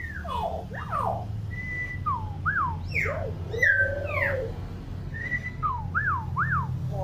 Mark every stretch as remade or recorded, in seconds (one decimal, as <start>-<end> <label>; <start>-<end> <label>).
0.0-5.0 recorded; 5.0-5.8 remade; 5.8-7.0 recorded